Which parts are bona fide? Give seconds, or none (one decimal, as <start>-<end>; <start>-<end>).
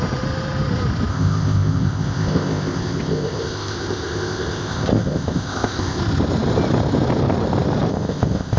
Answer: 0.0-1.1; 6.0-7.9